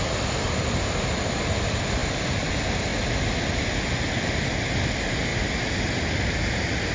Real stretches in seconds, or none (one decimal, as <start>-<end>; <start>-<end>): 0.0-6.9